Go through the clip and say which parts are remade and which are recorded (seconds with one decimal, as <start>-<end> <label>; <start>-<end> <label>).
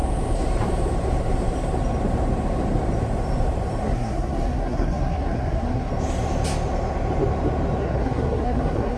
0.0-3.8 recorded; 3.8-5.9 remade; 5.9-7.8 recorded; 7.8-9.0 remade